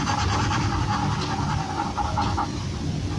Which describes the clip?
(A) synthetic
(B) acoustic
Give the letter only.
B